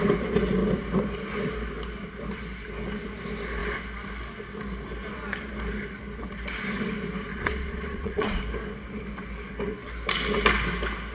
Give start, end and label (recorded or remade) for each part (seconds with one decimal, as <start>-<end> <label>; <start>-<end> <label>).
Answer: 0.0-7.3 recorded; 7.3-8.4 remade; 8.4-11.1 recorded